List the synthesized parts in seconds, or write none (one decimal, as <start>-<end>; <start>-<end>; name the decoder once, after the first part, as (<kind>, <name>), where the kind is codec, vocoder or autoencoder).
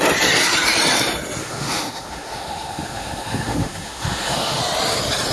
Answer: 1.4-4.6 (autoencoder, DAC-VAE)